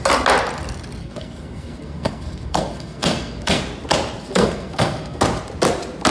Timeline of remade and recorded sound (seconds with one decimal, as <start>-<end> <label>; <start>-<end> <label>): 0.0-1.0 recorded; 1.0-3.6 remade; 3.6-4.3 recorded; 4.3-5.2 remade; 5.2-6.1 recorded